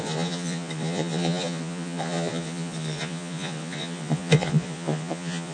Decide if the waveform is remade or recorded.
remade